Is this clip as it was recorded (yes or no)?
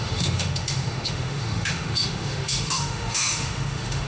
no